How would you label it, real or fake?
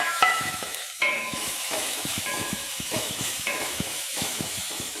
fake